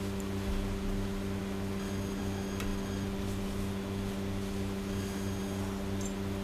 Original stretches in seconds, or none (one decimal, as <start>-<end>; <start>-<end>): 0.0-6.4